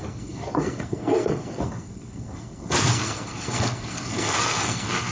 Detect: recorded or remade remade